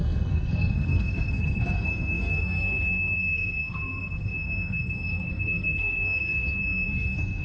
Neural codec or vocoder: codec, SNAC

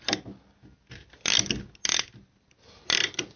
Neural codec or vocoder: none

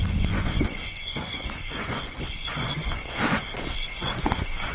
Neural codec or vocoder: vocoder, Vocos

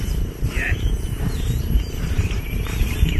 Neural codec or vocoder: vocoder, BigVGAN v2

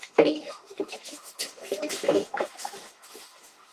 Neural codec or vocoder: autoencoder, DAC-VAE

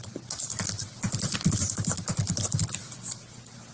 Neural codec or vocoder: none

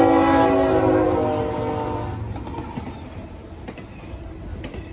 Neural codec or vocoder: none